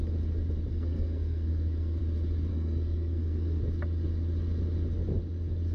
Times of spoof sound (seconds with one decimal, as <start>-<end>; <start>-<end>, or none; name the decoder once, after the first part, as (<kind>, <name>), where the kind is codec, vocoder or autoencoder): 0.7-2.0 (codec, SNAC); 2.5-3.6